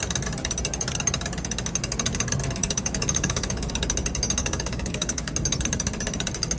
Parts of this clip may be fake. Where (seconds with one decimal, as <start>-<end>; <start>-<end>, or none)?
2.6-3.7; 4.4-5.3